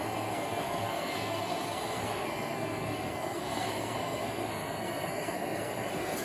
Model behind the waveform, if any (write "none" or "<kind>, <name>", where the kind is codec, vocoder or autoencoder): codec, SNAC